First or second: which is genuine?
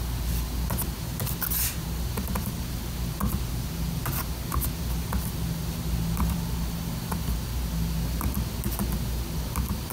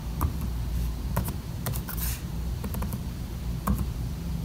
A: first